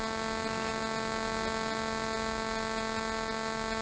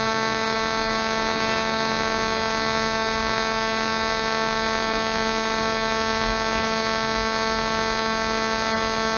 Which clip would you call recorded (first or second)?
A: first